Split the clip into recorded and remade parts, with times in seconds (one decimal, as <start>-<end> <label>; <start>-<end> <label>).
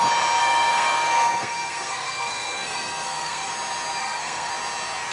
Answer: 0.0-0.4 recorded; 0.4-3.5 remade; 3.5-4.0 recorded; 4.0-4.5 remade; 4.5-5.1 recorded